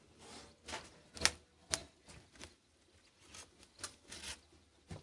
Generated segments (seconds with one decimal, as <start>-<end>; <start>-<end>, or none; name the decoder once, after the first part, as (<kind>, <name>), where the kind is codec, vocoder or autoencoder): none